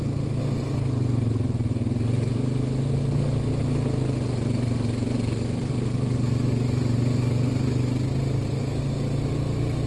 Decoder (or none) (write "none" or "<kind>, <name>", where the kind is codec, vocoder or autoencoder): none